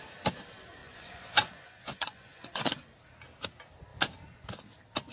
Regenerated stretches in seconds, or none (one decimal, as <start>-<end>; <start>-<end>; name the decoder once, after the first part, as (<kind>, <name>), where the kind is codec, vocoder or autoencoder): 0.8-2.7 (vocoder, Vocos)